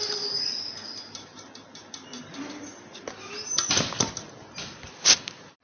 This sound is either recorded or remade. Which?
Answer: recorded